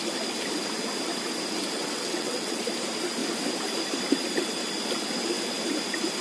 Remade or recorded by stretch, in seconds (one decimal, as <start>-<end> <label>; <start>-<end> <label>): 0.0-1.8 recorded; 1.8-2.6 remade; 2.6-6.2 recorded